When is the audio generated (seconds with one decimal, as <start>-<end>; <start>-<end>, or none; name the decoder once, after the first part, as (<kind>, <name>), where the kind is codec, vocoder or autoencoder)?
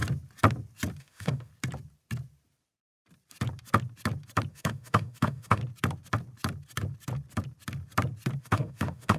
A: 1.0-1.5 (autoencoder, DAC-VAE); 4.5-5.6; 8.4-9.2